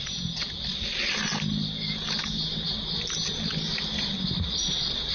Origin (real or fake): real